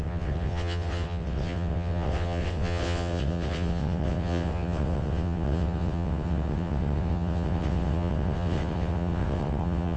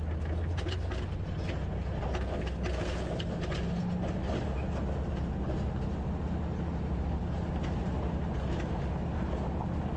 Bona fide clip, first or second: second